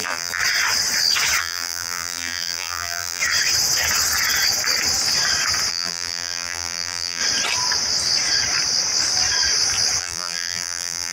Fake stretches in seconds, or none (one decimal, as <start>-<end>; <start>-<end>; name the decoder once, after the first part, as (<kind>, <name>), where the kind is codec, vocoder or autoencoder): 0.0-0.4 (vocoder, BigVGAN v2); 1.4-3.2; 5.7-7.2; 10.0-11.1